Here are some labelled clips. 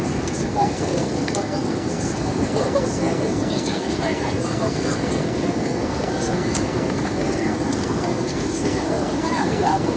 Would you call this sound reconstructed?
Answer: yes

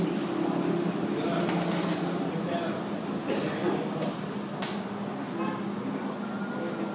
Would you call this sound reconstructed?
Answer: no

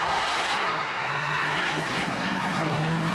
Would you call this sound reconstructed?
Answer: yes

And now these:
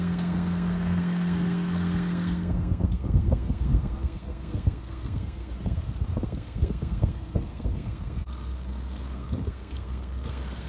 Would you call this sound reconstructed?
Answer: yes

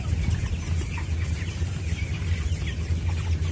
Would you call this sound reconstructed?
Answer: no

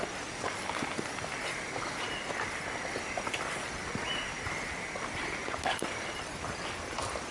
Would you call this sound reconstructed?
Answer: no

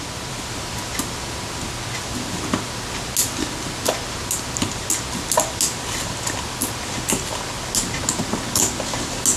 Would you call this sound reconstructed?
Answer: no